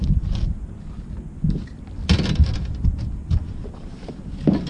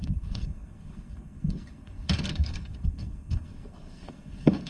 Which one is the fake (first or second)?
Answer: second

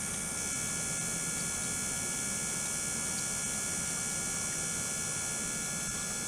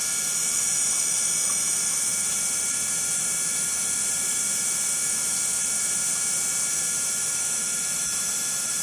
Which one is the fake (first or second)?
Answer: second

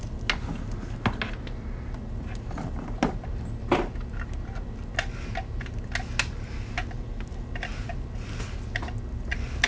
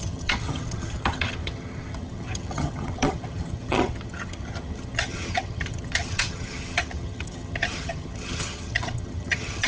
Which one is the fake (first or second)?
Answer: second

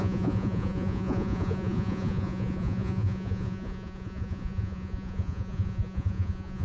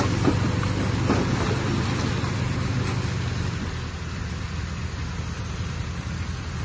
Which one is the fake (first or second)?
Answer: first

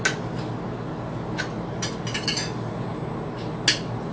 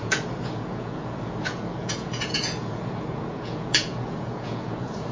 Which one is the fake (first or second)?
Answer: second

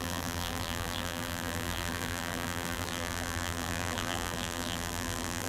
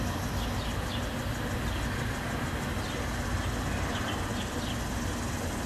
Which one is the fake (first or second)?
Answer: first